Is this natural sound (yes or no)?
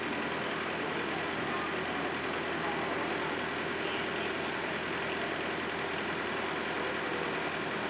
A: yes